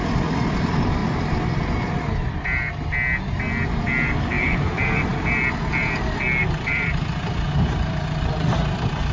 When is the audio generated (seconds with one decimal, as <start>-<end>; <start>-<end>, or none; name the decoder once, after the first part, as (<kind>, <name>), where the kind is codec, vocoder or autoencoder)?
0.0-1.0 (vocoder, BigVGAN v2); 4.2-5.1; 6.4-9.1